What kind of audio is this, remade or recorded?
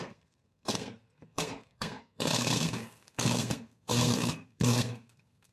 remade